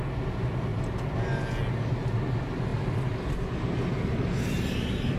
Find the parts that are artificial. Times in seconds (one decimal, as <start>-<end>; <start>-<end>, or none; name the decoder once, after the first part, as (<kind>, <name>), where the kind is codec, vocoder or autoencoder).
0.7-1.4 (vocoder, BigVGAN v2); 2.7-4.2